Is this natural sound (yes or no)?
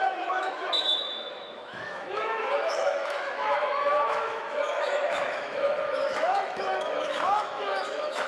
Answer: no